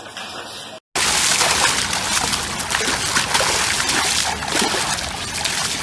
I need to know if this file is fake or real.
real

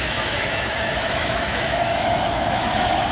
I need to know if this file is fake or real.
fake